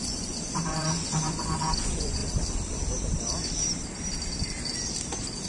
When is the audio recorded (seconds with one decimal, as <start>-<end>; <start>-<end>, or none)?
2.2-5.5